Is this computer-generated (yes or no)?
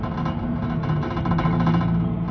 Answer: no